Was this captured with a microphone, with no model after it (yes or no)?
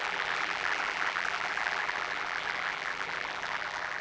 no